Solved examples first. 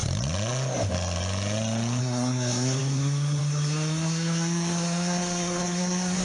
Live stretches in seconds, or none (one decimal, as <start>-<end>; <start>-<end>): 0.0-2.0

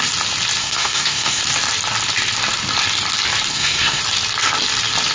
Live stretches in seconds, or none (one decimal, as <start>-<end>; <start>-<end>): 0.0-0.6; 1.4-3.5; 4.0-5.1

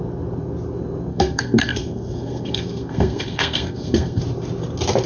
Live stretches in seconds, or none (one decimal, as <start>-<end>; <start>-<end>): 0.0-1.1; 4.2-5.1

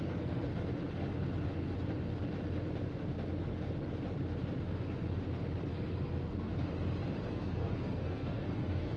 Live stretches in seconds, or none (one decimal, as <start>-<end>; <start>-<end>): 0.5-5.7; 6.5-7.3